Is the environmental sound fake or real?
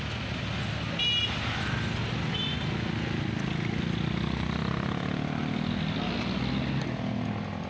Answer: real